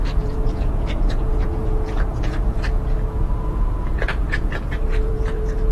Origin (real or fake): fake